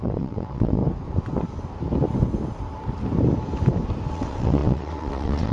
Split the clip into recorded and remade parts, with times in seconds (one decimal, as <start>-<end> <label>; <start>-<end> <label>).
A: 0.0-0.8 remade; 0.8-4.1 recorded; 4.1-5.5 remade